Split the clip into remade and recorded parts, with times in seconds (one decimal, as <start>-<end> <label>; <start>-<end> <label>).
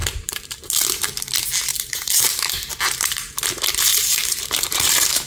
0.0-0.6 remade; 0.6-1.7 recorded; 1.7-3.3 remade; 3.3-3.9 recorded; 3.9-5.3 remade